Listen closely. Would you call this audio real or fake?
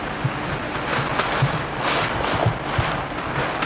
real